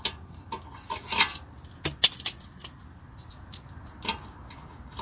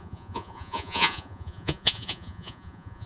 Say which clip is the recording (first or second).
first